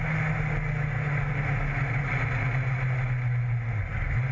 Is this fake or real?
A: real